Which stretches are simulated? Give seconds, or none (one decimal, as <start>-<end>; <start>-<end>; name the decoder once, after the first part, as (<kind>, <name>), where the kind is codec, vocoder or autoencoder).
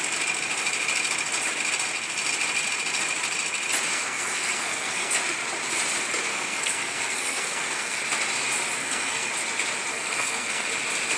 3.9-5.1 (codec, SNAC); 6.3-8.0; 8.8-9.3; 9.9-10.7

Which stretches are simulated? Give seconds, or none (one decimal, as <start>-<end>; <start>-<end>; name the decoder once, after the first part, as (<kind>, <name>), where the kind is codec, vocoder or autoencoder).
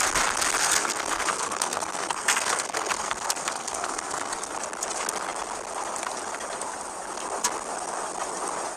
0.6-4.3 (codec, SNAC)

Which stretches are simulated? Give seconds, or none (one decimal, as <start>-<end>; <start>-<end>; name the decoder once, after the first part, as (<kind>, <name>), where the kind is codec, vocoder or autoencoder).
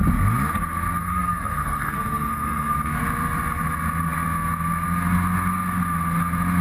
1.0-3.0 (codec, SNAC)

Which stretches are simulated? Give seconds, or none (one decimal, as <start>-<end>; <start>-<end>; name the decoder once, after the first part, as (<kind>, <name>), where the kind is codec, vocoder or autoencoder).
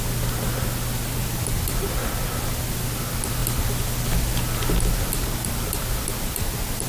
none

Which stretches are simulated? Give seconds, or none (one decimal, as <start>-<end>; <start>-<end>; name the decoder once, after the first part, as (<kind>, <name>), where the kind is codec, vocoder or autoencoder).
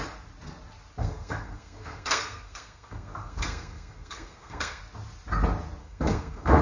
1.0-4.8 (codec, SNAC); 5.8-6.6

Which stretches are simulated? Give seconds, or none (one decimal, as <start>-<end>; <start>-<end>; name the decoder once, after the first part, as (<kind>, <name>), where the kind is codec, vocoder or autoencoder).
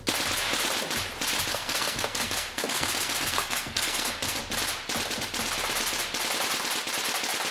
1.5-4.4 (codec, SNAC)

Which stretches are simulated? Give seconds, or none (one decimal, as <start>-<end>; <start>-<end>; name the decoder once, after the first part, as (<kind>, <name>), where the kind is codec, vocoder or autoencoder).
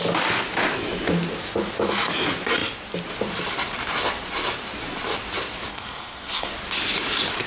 5.7-6.5 (codec, SNAC)